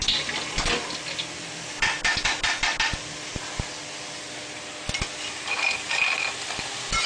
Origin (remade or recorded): recorded